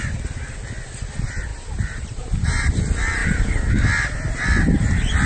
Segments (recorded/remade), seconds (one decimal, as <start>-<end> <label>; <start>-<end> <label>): 0.0-1.5 recorded; 1.5-2.7 remade; 2.7-3.2 recorded; 3.2-3.7 remade; 3.7-5.3 recorded